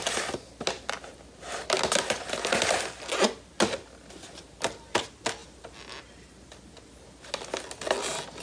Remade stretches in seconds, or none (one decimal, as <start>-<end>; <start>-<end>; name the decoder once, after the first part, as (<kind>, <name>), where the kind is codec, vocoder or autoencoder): none